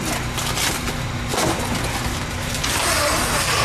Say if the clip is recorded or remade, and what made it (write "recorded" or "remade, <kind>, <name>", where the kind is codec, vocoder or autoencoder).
recorded